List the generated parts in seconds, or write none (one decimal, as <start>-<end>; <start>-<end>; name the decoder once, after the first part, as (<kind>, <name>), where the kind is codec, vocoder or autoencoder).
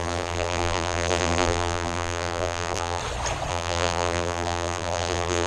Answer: 0.0-3.0 (vocoder, BigVGAN v2); 3.5-5.5